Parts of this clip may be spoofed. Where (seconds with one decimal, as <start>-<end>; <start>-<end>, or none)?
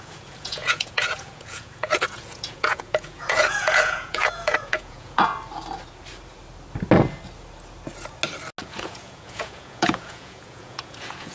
0.0-5.3; 8.6-11.3